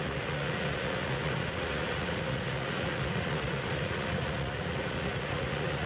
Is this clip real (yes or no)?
no